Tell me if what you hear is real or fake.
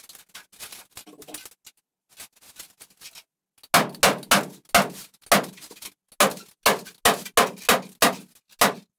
real